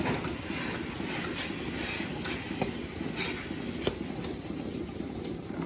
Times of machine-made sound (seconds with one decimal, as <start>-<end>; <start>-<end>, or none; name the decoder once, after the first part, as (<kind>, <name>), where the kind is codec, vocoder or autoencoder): none